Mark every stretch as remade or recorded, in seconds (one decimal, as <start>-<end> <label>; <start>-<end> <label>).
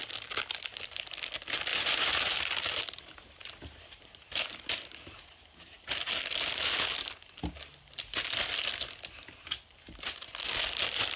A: 0.0-1.7 recorded; 1.7-6.1 remade; 6.1-11.2 recorded